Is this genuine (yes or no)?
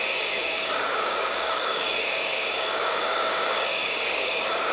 no